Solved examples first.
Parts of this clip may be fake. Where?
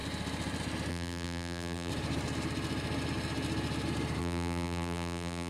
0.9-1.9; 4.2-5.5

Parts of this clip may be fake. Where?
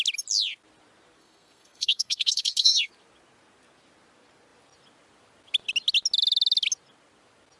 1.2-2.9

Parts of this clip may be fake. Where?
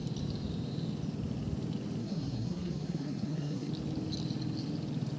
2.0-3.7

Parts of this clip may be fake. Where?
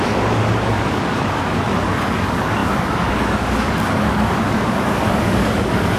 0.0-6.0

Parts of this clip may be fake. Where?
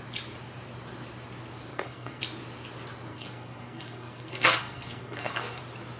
1.7-2.2; 3.1-5.6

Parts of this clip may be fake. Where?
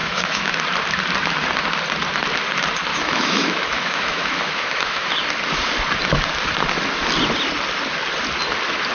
0.0-0.5; 2.9-5.1